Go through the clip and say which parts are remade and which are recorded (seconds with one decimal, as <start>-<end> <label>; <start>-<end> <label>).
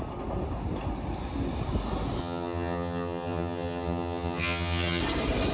0.0-2.2 recorded; 2.2-5.0 remade; 5.0-5.5 recorded